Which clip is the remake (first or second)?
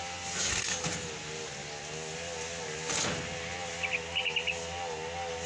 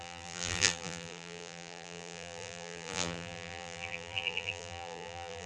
second